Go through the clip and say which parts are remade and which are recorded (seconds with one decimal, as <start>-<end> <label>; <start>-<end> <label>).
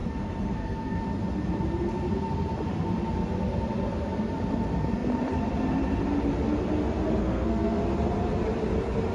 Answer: 0.0-1.0 remade; 1.0-7.2 recorded; 7.2-7.8 remade; 7.8-9.1 recorded